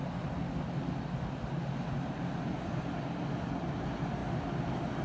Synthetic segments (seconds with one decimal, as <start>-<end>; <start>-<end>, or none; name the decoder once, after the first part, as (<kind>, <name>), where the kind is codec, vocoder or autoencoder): none